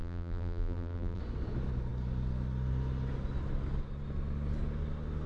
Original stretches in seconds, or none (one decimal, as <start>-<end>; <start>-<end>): 1.2-5.3